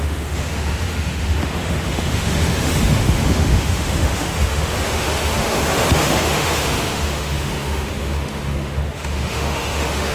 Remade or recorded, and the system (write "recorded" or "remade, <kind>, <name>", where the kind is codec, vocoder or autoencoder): remade, autoencoder, DAC-VAE